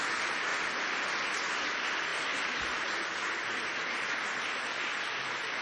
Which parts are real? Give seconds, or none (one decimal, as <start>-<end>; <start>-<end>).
0.0-5.6